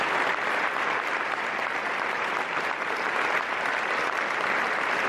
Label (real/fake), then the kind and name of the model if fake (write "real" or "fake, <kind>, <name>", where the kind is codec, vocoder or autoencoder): fake, vocoder, BigVGAN v2